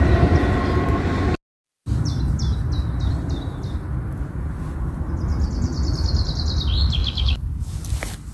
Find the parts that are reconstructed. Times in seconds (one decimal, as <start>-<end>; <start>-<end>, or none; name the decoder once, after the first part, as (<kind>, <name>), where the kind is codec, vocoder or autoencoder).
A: 7.0-7.8 (codec, DAC)